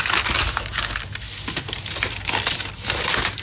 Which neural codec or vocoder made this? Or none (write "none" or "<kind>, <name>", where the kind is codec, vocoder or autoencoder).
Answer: none